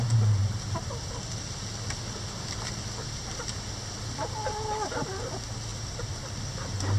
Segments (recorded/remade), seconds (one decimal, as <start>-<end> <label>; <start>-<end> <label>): 0.0-0.4 recorded; 0.4-4.0 remade; 4.0-5.7 recorded; 5.7-6.3 remade; 6.3-7.0 recorded